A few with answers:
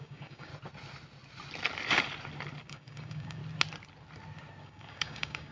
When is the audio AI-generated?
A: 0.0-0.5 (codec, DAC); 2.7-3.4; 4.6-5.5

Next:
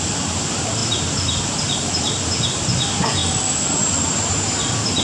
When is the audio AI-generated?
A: none

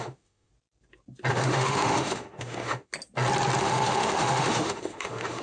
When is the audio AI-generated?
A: 0.0-0.5 (autoencoder, DAC-VAE); 1.3-2.9; 3.6-5.4

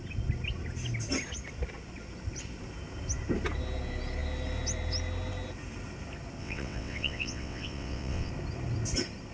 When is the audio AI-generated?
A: 6.4-8.3 (vocoder, WaveNeXt)

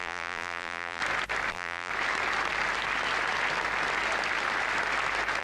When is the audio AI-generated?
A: 0.0-1.0 (vocoder, BigVGAN v2); 1.5-1.9

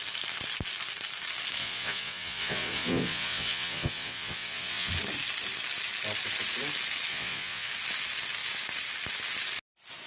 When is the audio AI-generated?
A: 1.6-4.9 (vocoder, Vocos); 7.1-7.7

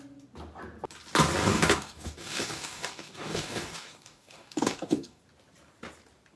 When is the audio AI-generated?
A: 1.4-5.2 (codec, DAC)

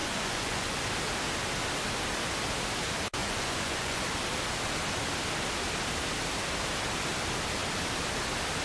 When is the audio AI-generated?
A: 0.0-0.9 (vocoder, Vocos); 3.2-4.0